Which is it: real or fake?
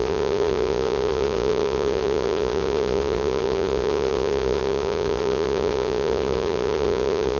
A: fake